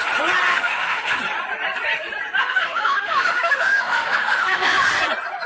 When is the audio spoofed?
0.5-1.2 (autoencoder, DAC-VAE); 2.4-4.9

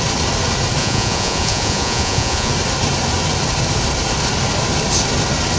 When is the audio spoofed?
0.8-2.5 (vocoder, Vocos)

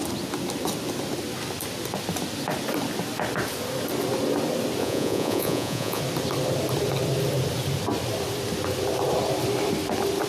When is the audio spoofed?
4.8-6.0 (vocoder, Vocos)

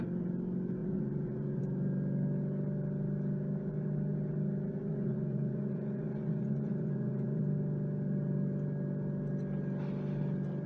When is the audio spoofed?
0.8-1.6 (vocoder, Vocos); 4.9-7.4

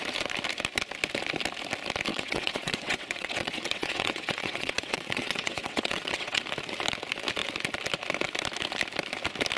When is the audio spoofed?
2.1-6.4 (vocoder, WaveNeXt)

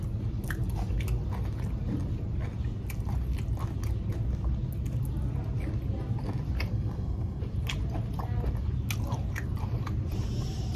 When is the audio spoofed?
6.7-7.4 (codec, SNAC)

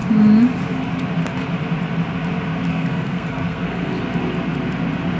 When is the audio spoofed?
2.7-3.9 (codec, SNAC)

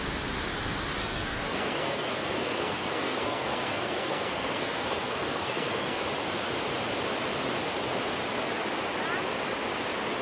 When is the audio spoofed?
1.0-6.0 (codec, SNAC)